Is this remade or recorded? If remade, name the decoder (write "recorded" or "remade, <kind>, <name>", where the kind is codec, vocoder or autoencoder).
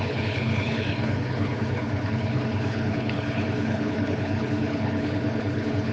remade, codec, HILCodec